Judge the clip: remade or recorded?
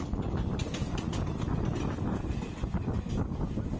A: recorded